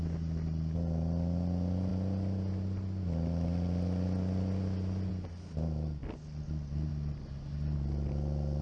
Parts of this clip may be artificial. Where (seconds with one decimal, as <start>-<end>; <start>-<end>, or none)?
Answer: none